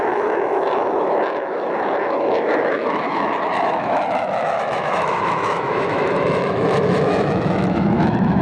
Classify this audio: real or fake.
fake